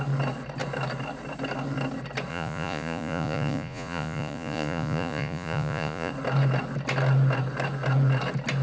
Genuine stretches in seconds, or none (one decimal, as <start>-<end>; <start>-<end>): 0.0-2.3; 6.1-8.6